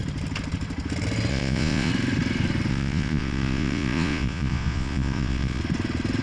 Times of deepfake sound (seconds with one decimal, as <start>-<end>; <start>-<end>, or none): 1.3-1.9; 2.7-5.6